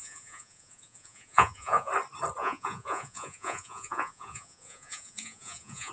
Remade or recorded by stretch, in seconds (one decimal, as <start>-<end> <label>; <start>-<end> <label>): 0.0-1.9 remade; 1.9-2.4 recorded; 2.4-5.9 remade